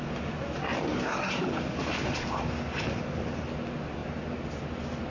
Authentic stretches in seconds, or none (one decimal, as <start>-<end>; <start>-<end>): 0.0-5.1